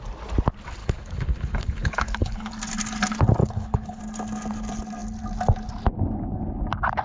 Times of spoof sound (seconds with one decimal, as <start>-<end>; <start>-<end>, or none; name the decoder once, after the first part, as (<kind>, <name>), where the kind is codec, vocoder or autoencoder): 0.8-2.5 (codec, HILCodec); 3.4-4.0